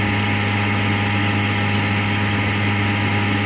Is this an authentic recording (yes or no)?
yes